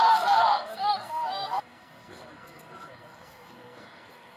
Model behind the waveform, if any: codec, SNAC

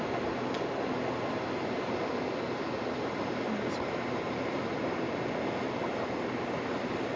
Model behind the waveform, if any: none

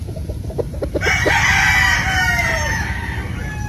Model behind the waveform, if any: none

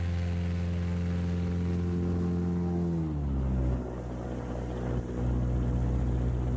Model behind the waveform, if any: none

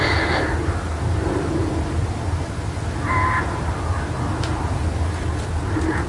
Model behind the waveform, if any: none